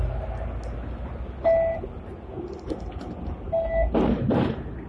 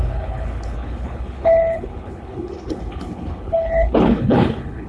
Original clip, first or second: first